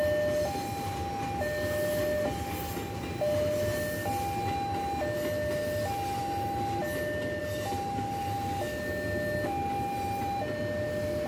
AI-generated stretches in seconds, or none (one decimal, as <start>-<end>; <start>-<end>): none